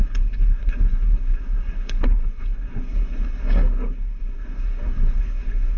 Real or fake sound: fake